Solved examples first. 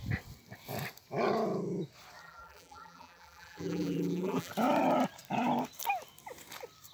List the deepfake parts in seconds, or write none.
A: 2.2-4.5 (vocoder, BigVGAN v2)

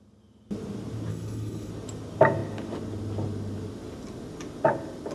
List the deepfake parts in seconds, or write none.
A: 1.1-1.7 (codec, HILCodec)

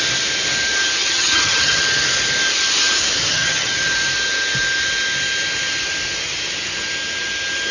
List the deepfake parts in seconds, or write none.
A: 1.0-1.8 (vocoder, HiFi-GAN); 3.3-3.8

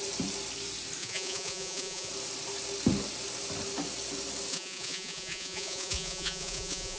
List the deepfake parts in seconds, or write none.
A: 1.0-2.1 (vocoder, Vocos); 4.5-7.0

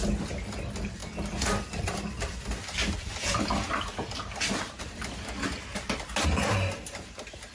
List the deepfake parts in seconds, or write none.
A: none